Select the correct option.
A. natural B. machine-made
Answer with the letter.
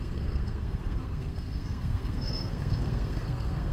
B